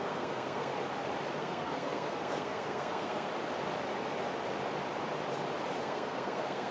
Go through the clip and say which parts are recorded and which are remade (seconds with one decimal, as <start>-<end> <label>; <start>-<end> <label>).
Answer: 0.0-0.7 remade; 0.7-1.4 recorded; 1.4-3.3 remade; 3.3-5.8 recorded; 5.8-6.7 remade